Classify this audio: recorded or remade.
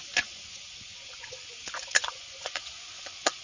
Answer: remade